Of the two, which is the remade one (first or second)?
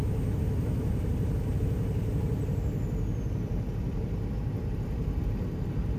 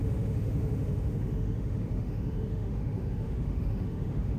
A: second